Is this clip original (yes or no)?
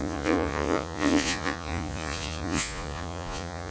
no